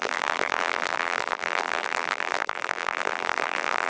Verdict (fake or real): fake